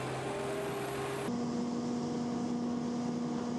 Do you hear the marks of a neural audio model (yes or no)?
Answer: no